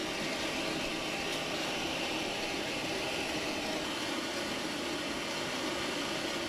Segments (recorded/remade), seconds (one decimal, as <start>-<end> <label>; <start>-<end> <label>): 0.0-1.3 recorded; 1.3-3.5 remade; 3.5-6.5 recorded